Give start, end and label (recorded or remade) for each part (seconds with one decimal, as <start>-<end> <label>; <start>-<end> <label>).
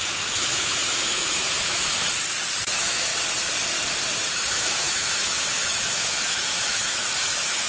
0.0-2.0 remade; 2.0-2.6 recorded; 2.6-3.1 remade; 3.1-4.4 recorded; 4.4-7.7 remade